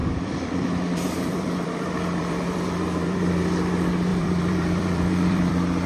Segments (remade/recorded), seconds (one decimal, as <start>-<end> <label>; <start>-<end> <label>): 0.0-3.4 remade; 3.4-4.1 recorded; 4.1-5.5 remade; 5.5-5.9 recorded